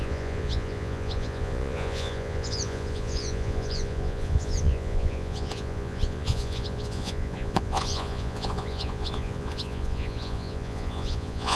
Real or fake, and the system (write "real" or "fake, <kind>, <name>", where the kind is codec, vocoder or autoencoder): fake, vocoder, Vocos